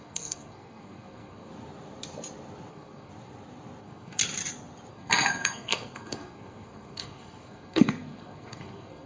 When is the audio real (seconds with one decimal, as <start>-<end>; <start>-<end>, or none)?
1.5-2.7; 3.1-3.8; 4.2-4.9